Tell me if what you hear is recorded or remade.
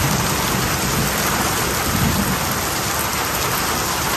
recorded